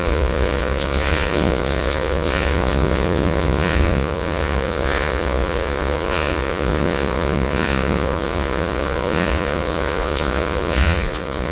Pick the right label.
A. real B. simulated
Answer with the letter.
B